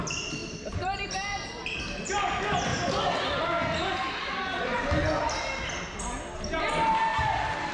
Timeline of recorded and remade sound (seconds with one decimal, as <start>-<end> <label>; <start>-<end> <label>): 0.0-0.4 recorded; 0.4-1.8 remade; 1.8-7.1 recorded; 7.1-7.7 remade